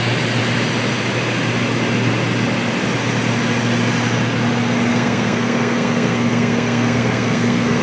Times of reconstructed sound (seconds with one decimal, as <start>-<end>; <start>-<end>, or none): 4.9-7.8